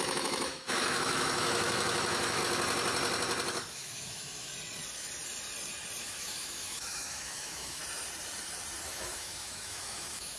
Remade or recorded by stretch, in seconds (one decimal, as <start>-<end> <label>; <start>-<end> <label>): 0.0-2.4 remade; 2.4-3.7 recorded; 3.7-4.5 remade; 4.5-6.0 recorded; 6.0-7.8 remade; 7.8-8.9 recorded; 8.9-10.4 remade